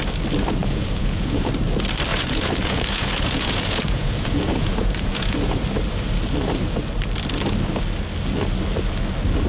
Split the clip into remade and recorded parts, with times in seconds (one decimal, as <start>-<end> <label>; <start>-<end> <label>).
0.0-0.6 recorded; 0.6-1.5 remade; 1.5-2.1 recorded; 2.1-5.6 remade; 5.6-9.5 recorded